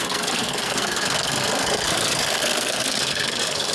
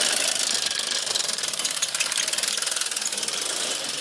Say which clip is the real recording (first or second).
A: second